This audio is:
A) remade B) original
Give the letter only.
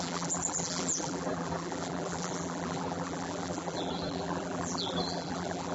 A